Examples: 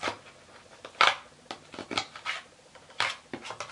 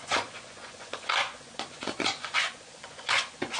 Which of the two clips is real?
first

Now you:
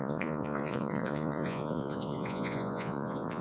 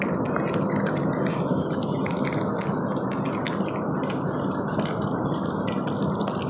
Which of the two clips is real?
second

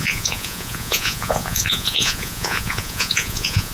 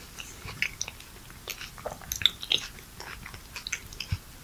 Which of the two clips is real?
second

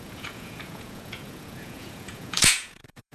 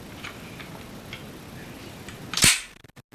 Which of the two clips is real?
second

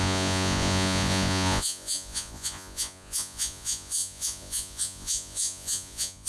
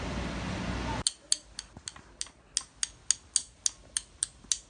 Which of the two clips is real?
second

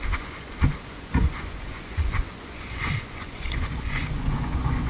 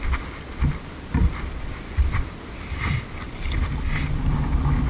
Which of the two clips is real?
second